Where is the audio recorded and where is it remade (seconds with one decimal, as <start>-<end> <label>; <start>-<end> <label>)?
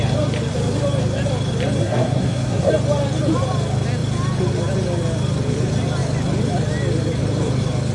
0.0-1.8 recorded; 1.8-2.7 remade; 2.7-7.9 recorded